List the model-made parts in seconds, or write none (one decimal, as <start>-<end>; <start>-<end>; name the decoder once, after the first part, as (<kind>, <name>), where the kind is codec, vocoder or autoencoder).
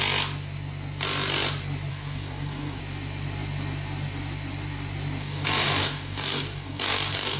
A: 1.9-2.8 (codec, DAC); 5.2-7.4